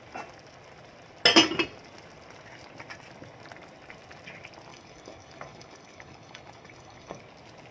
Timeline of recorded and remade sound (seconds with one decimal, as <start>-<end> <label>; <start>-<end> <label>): 0.0-4.7 recorded; 4.7-7.2 remade; 7.2-7.7 recorded